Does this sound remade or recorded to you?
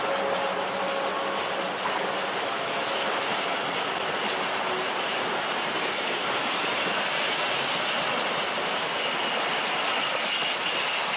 recorded